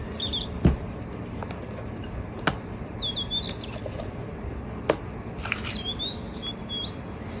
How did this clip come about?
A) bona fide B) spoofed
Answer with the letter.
A